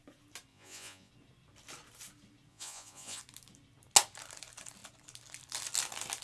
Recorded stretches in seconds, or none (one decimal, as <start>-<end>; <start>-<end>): 0.0-0.5; 1.1-2.5; 3.2-6.2